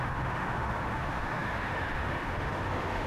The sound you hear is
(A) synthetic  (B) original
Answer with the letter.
A